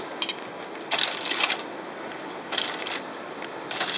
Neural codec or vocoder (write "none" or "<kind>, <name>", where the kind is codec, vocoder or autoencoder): none